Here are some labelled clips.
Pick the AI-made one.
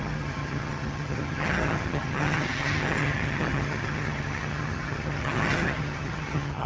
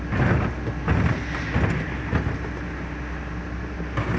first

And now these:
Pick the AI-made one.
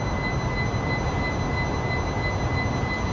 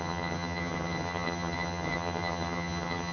second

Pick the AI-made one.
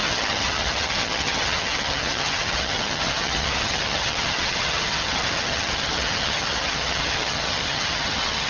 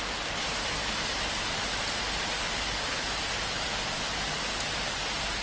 first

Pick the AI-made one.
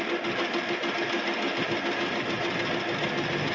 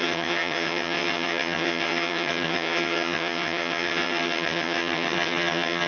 second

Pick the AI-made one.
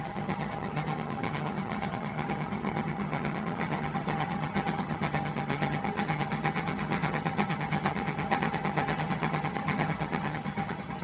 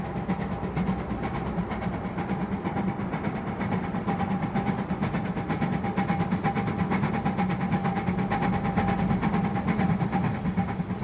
first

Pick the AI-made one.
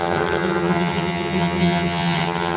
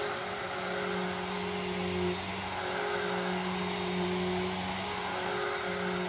first